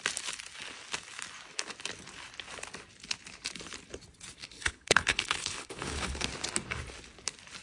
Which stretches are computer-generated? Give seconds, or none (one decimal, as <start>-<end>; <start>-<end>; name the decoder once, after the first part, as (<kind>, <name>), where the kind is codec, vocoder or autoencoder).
4.4-6.3 (codec, HILCodec)